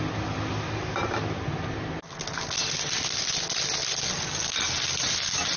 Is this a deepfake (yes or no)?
no